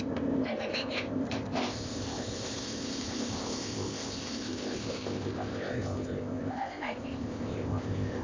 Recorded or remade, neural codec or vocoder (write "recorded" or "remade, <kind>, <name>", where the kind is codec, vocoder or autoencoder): remade, codec, ZipCodec